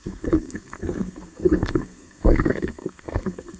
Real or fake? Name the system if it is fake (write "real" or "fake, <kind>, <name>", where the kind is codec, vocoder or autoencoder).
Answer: fake, codec, SNAC